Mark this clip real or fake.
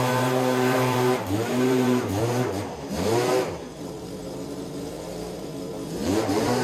fake